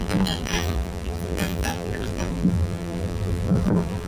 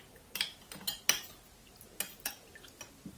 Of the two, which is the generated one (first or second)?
first